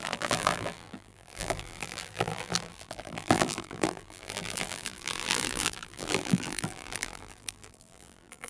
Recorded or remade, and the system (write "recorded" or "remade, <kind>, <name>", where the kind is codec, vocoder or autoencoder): remade, vocoder, BigVGAN v2